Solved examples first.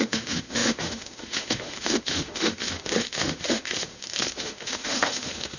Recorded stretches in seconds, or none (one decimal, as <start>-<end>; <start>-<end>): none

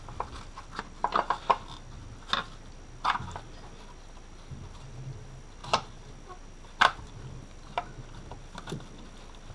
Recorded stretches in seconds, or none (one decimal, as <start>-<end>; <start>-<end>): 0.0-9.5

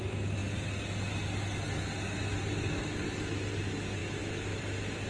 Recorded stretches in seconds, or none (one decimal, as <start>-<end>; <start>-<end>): 0.0-4.0; 4.6-5.1